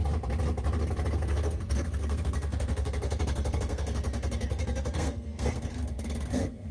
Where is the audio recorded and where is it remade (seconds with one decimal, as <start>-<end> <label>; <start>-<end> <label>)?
0.0-1.1 recorded; 1.1-6.7 remade